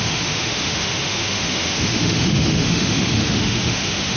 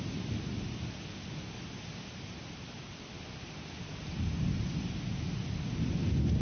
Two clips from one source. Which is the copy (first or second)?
first